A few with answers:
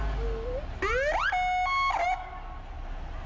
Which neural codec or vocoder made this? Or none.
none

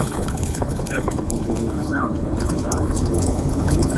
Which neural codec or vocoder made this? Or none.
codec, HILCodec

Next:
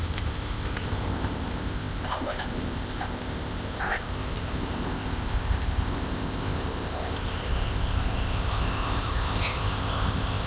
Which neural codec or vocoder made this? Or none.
codec, ZipCodec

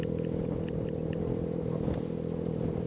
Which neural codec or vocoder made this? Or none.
none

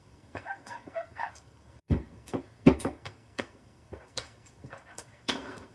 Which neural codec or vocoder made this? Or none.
codec, SNAC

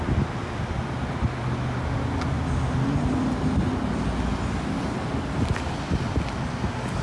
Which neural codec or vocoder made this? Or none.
none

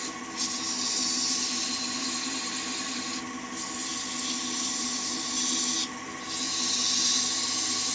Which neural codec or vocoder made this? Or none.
none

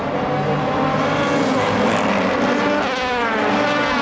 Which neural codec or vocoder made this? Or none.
none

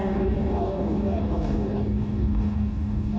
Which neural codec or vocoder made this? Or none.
codec, DAC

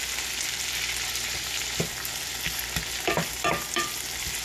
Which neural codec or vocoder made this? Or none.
none